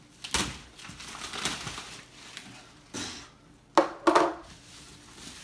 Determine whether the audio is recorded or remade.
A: recorded